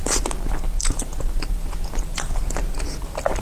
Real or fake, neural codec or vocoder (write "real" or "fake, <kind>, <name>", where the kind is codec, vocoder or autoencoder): real